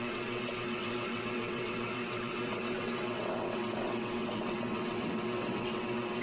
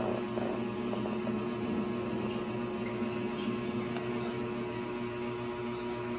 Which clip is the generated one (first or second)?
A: first